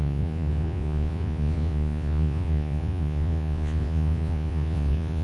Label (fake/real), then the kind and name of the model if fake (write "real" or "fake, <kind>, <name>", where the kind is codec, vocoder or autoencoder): fake, vocoder, Vocos